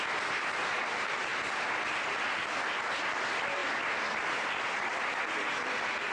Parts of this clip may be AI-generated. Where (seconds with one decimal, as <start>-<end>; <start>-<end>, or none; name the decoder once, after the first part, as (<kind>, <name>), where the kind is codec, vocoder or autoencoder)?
none

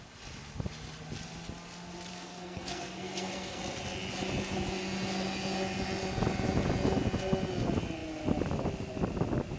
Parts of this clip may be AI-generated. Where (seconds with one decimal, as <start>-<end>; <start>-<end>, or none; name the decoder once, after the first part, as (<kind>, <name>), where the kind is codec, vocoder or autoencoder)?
2.1-3.6 (codec, SNAC)